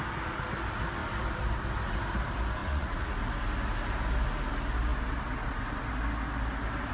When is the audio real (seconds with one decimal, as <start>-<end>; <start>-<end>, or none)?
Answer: 0.0-2.6; 3.1-6.9